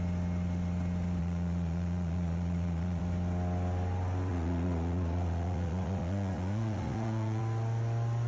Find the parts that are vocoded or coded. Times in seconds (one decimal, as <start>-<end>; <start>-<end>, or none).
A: 1.2-3.0; 4.3-7.4